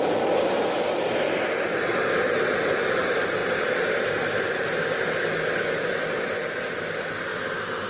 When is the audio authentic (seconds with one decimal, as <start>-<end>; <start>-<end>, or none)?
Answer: 0.0-7.9